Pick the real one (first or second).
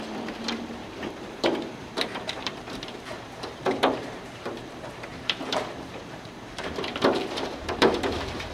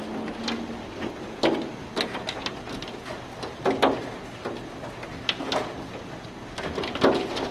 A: second